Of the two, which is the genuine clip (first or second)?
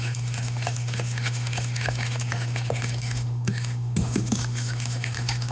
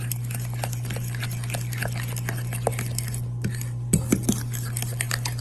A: second